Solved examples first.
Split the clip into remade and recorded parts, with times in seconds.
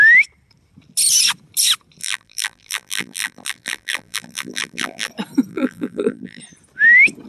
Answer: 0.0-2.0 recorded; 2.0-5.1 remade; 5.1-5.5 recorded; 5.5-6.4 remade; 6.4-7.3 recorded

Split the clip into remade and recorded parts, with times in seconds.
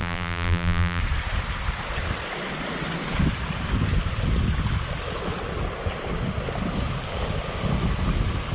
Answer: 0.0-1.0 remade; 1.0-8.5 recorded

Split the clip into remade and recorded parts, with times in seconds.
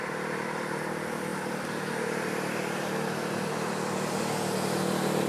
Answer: 0.0-5.3 recorded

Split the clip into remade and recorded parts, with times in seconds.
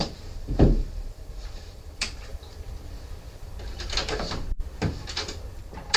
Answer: 0.0-2.3 remade; 2.3-5.6 recorded; 5.6-6.0 remade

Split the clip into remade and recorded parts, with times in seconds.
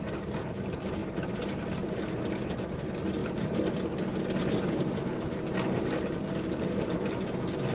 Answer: 0.0-1.0 recorded; 1.0-2.0 remade; 2.0-7.7 recorded